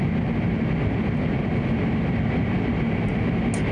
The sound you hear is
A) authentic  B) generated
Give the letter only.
A